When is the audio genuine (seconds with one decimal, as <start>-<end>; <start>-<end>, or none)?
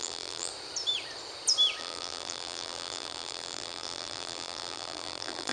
0.5-1.8